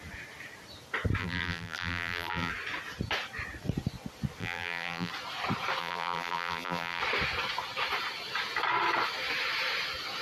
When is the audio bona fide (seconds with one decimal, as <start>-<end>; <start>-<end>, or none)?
0.0-1.2; 2.5-4.4; 5.1-5.8; 7.0-10.2